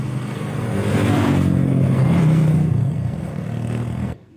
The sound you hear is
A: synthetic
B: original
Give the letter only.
A